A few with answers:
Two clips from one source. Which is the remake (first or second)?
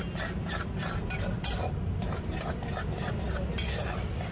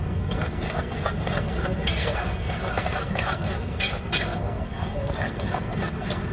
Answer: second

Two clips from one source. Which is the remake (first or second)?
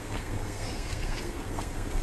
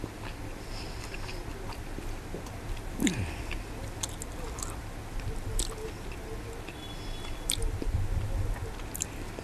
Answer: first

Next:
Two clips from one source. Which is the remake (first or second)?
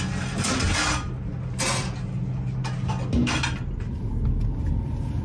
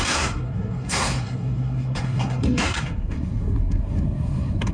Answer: second